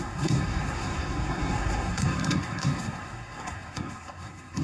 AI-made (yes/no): yes